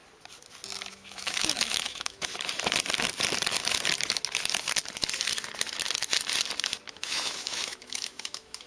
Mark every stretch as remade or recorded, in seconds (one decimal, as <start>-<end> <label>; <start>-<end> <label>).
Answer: 0.0-0.9 recorded; 0.9-2.3 remade; 2.3-6.9 recorded; 6.9-8.7 remade